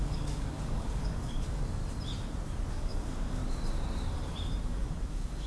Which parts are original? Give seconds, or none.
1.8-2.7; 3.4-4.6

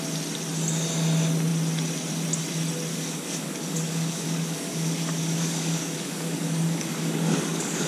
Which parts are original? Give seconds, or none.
0.0-2.9

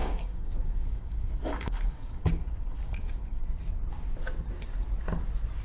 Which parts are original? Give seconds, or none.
3.4-5.6

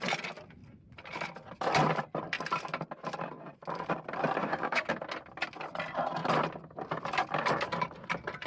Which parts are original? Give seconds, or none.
0.0-4.4; 4.9-8.5